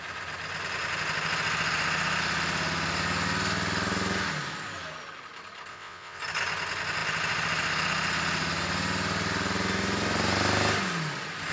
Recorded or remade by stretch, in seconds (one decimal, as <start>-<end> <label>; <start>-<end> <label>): 0.0-5.7 recorded; 5.7-6.2 remade; 6.2-11.5 recorded